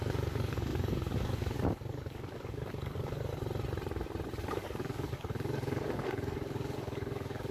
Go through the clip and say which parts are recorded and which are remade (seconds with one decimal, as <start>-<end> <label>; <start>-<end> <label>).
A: 0.0-3.3 remade; 3.3-4.4 recorded; 4.4-7.5 remade